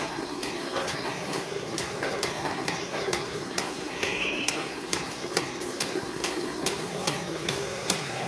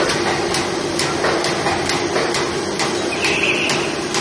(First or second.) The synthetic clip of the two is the first